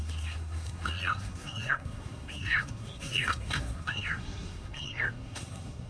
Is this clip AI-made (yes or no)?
yes